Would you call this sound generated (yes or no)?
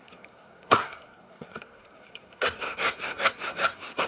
yes